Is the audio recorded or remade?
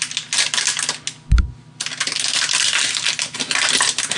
recorded